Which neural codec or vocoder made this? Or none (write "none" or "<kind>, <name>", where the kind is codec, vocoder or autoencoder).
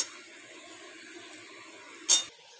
none